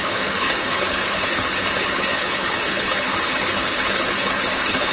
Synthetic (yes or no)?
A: yes